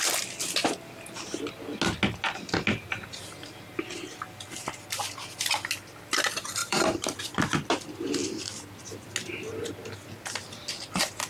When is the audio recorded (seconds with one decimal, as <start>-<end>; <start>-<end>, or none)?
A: 0.0-6.6; 7.2-8.2; 8.8-11.3